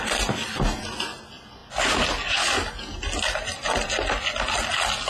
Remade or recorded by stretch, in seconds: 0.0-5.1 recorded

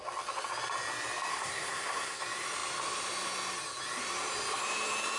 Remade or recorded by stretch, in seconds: 0.0-1.3 recorded; 1.3-2.2 remade; 2.2-5.2 recorded

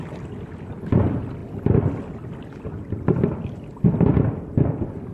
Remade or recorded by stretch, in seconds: 0.0-5.1 recorded

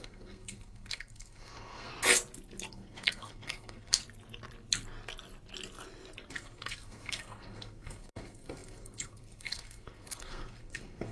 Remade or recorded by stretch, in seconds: 0.0-1.9 remade; 1.9-2.7 recorded; 2.7-4.0 remade; 4.0-6.3 recorded; 6.3-11.1 remade